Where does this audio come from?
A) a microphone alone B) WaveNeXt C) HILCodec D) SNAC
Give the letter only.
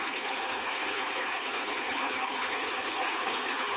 C